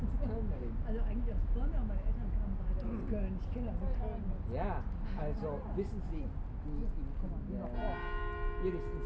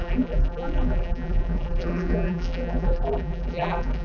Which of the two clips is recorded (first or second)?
first